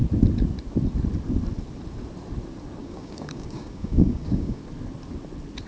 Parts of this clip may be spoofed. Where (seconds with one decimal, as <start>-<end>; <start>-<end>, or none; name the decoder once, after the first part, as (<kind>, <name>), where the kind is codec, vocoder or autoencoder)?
2.8-4.6 (codec, DAC)